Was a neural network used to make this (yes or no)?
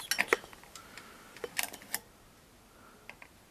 no